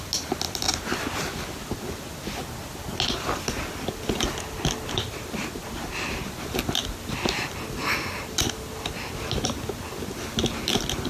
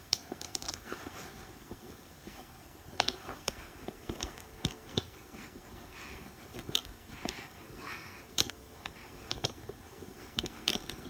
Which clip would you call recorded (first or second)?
first